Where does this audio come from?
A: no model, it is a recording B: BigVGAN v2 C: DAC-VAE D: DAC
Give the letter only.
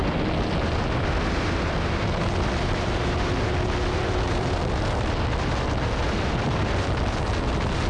A